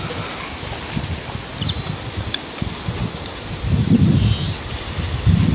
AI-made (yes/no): no